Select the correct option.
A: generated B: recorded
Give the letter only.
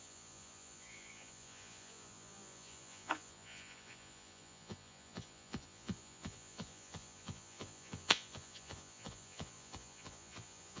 A